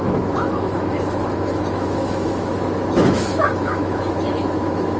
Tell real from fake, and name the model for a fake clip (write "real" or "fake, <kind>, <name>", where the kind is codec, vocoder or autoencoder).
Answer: fake, autoencoder, DAC-VAE